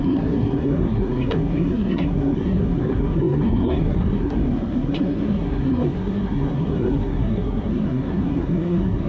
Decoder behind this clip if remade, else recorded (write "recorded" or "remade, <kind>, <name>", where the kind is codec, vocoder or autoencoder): remade, codec, SNAC